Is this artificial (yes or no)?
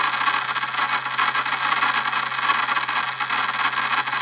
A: no